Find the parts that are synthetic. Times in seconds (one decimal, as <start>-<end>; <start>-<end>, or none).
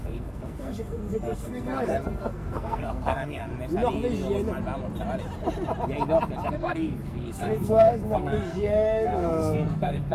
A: 0.0-3.5; 6.5-10.1